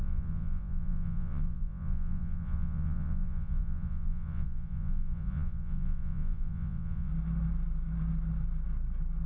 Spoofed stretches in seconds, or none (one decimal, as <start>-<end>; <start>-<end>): 0.0-7.1